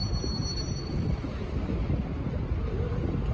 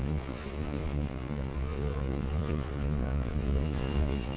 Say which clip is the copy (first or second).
second